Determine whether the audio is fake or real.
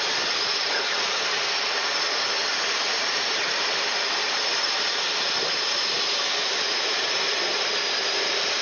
fake